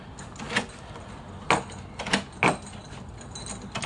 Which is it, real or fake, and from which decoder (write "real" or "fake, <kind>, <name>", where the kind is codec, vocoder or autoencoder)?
real